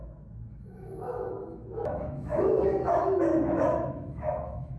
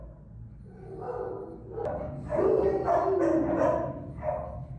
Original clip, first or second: second